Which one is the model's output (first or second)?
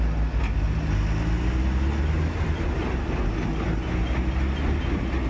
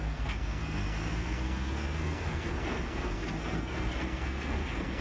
second